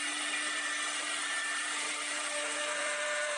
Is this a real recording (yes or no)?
no